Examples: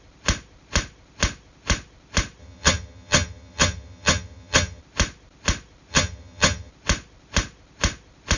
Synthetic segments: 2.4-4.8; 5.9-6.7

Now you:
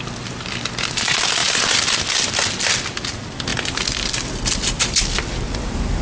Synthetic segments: none

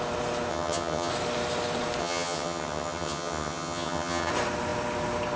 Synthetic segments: 0.5-1.1; 2.0-4.3